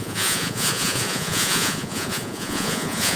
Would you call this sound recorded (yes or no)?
no